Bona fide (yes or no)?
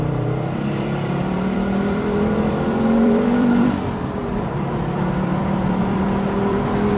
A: no